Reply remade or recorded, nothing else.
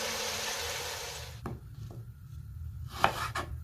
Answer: remade